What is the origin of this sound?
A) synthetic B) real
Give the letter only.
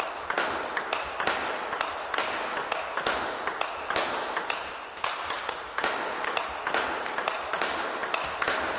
B